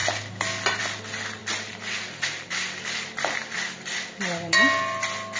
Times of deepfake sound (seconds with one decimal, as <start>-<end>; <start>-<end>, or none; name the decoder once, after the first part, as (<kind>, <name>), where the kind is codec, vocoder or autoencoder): none